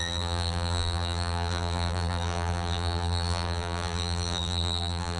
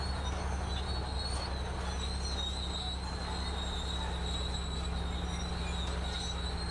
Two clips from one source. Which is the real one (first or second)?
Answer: second